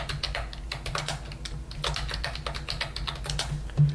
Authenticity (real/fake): real